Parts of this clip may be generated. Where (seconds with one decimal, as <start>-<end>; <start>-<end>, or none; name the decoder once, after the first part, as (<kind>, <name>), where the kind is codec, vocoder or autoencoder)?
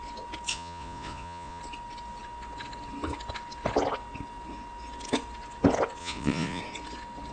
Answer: 0.5-1.6 (vocoder, Vocos); 6.0-6.6